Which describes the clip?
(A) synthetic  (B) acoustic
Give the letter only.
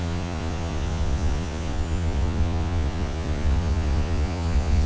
A